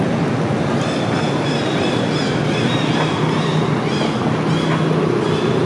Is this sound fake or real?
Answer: real